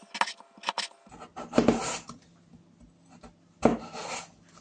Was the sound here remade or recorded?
recorded